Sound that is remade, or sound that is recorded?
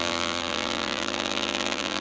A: remade